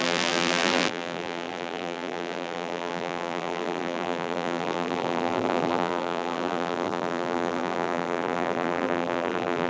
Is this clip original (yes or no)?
no